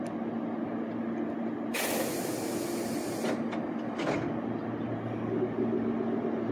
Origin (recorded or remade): recorded